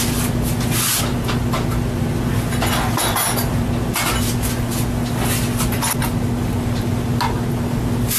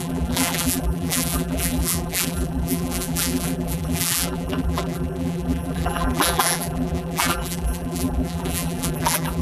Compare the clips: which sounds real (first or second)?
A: first